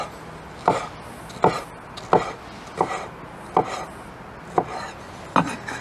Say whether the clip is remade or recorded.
recorded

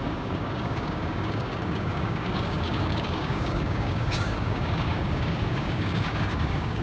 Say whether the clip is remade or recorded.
remade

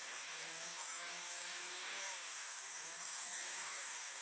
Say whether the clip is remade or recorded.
remade